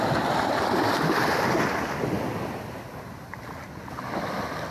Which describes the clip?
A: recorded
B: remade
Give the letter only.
A